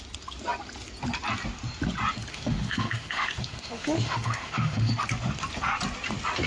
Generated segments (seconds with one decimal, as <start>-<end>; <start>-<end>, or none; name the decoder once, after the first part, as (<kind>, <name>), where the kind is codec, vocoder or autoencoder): 2.3-4.9 (autoencoder, DAC-VAE)